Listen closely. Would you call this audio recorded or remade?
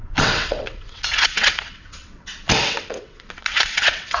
remade